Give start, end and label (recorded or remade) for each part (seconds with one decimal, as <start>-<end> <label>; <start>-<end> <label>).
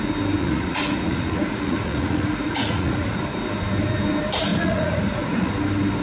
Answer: 0.0-0.4 recorded; 0.4-3.2 remade; 3.2-4.5 recorded; 4.5-5.5 remade; 5.5-6.0 recorded